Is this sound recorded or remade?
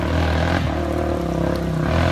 recorded